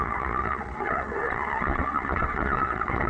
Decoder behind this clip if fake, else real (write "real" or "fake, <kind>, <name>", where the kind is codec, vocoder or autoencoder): fake, vocoder, WaveNeXt